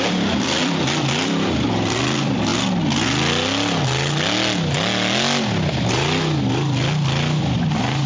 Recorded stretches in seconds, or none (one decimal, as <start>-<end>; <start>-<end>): 2.5-7.4